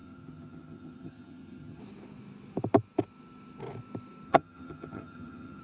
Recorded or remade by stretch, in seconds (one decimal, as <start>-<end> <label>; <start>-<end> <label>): 0.0-1.8 remade; 1.8-4.3 recorded; 4.3-5.6 remade